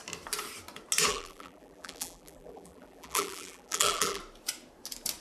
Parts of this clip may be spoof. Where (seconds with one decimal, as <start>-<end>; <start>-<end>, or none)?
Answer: 1.1-4.2